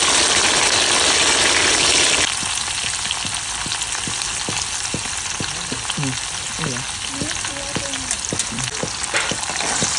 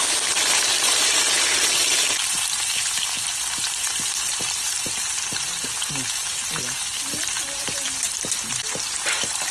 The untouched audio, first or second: first